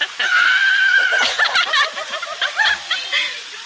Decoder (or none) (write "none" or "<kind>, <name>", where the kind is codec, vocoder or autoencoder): vocoder, BigVGAN v2